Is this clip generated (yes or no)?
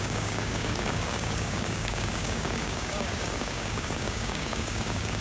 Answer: yes